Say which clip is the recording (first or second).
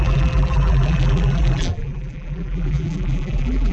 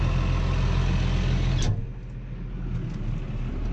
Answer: second